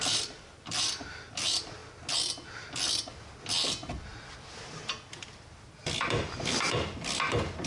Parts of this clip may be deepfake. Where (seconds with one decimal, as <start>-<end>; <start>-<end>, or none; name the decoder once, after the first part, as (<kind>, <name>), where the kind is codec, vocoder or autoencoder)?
0.0-1.8 (vocoder, BigVGAN v2); 2.6-7.7